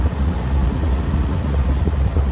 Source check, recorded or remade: remade